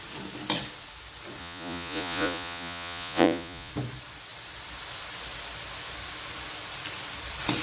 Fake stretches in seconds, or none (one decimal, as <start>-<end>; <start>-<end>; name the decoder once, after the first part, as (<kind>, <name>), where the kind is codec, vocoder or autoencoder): 1.4-3.7 (vocoder, Vocos)